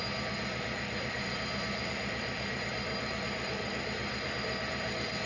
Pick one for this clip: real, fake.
fake